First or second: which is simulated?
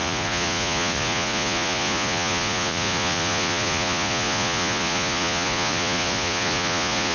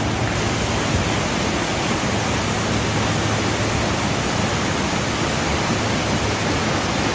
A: first